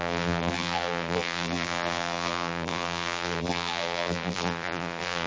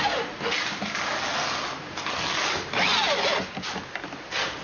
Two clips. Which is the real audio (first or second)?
second